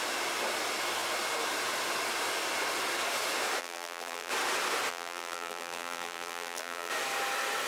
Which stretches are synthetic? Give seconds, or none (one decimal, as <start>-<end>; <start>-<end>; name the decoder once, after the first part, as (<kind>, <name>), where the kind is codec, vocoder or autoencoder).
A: 3.6-4.3 (vocoder, BigVGAN v2); 4.9-6.9